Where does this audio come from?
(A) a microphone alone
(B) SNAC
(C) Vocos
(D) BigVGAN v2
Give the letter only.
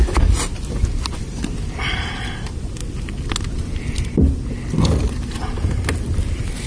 A